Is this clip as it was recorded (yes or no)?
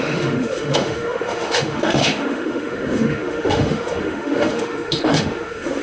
no